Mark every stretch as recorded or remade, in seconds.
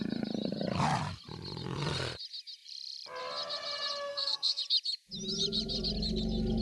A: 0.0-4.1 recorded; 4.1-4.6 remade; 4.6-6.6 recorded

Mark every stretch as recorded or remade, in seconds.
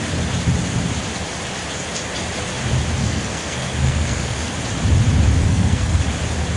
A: 0.0-3.0 recorded; 3.0-4.5 remade; 4.5-5.4 recorded; 5.4-6.0 remade; 6.0-6.6 recorded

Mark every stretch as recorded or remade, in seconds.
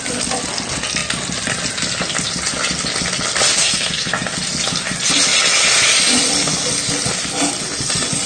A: 0.0-3.5 recorded; 3.5-4.1 remade; 4.1-8.3 recorded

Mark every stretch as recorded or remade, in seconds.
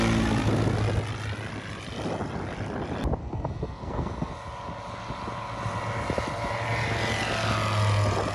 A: 0.0-3.2 recorded; 3.2-4.3 remade; 4.3-8.3 recorded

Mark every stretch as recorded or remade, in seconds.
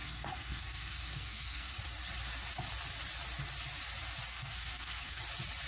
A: 0.0-1.7 remade; 1.7-4.3 recorded; 4.3-5.2 remade; 5.2-5.7 recorded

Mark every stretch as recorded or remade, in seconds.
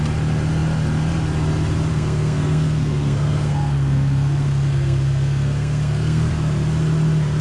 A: 0.0-1.9 recorded; 1.9-6.3 remade; 6.3-7.4 recorded